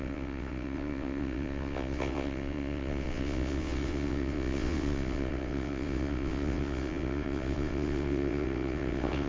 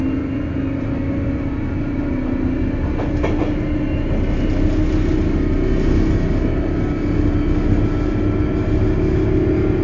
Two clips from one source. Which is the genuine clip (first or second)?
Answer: second